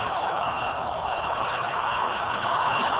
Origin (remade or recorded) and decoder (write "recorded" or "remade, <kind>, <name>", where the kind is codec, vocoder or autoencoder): remade, codec, HILCodec